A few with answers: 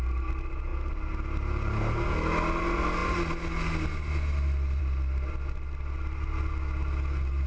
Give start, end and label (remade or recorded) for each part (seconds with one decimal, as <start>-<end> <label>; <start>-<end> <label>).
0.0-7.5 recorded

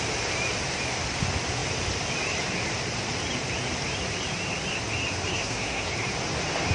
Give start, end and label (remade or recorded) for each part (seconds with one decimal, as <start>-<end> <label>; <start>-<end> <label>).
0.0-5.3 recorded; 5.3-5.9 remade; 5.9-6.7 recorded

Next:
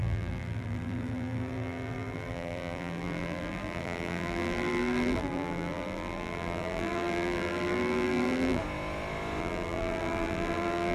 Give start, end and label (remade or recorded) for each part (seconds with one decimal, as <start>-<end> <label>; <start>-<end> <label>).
0.0-8.6 remade; 8.6-9.4 recorded; 9.4-10.9 remade